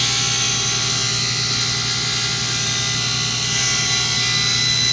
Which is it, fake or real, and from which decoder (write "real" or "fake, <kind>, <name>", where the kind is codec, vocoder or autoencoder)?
real